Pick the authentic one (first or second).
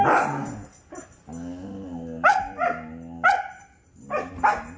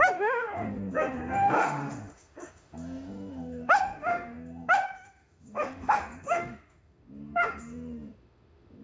first